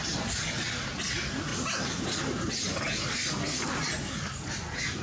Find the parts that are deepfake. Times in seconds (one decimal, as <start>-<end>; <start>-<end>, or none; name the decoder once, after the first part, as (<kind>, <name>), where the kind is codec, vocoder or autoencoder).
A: none